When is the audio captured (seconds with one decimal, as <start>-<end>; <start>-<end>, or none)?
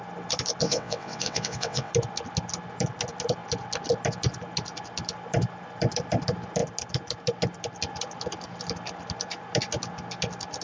0.0-0.6; 1.9-10.6